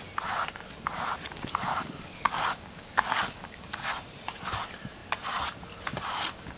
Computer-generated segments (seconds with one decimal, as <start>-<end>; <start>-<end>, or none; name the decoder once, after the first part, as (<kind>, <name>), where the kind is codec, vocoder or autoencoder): 1.7-3.9 (codec, DAC)